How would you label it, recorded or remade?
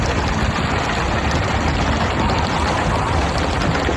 remade